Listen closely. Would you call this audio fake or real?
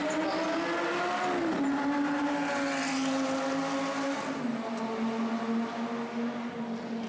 real